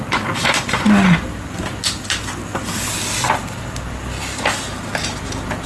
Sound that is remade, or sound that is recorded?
recorded